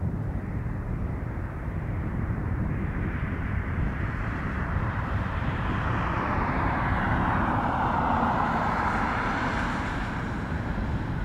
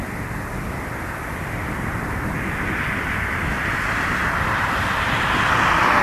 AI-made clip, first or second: first